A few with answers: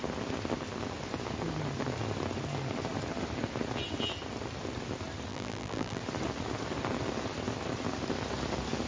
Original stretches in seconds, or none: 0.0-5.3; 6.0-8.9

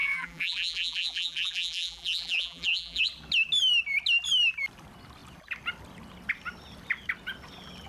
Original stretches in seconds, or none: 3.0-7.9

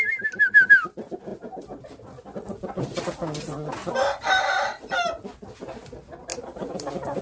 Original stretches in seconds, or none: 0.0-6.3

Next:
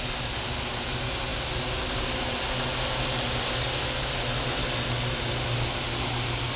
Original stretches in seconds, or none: 0.0-6.6

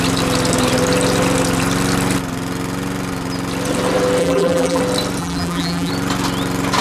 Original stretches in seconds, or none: 0.0-4.2; 4.8-5.2; 5.9-6.8

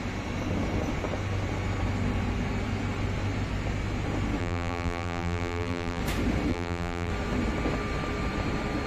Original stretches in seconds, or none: 0.0-4.4; 6.0-6.5; 7.1-8.9